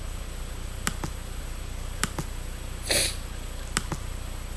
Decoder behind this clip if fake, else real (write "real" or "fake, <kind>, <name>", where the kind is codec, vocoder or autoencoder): real